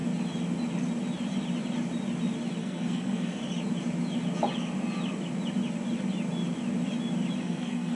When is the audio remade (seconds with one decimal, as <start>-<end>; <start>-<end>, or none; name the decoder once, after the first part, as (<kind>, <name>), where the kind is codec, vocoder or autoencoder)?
2.6-3.4 (codec, SNAC); 7.4-8.0